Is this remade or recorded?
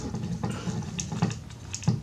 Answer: recorded